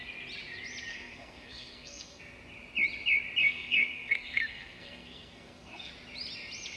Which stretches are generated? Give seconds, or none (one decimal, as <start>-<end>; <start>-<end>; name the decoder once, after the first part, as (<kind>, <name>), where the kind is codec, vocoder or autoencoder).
0.9-2.2 (codec, SNAC); 3.4-5.9